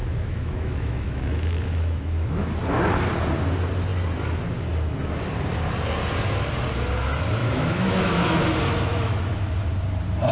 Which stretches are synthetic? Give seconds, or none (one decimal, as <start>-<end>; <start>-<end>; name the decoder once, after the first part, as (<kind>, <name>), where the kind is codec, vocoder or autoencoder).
0.0-2.5 (autoencoder, DAC-VAE); 7.4-8.4; 8.9-9.4